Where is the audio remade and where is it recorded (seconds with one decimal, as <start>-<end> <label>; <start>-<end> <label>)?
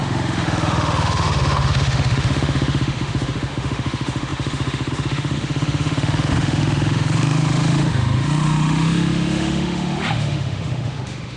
0.0-11.4 remade